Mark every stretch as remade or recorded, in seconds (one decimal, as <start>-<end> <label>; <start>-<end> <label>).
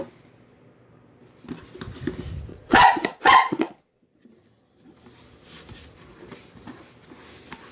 0.0-2.5 recorded; 2.5-4.0 remade; 4.0-7.7 recorded